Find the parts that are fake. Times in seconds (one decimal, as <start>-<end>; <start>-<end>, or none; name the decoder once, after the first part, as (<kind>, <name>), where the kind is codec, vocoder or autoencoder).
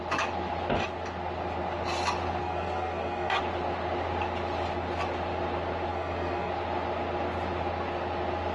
2.4-3.4 (codec, SNAC); 5.9-6.5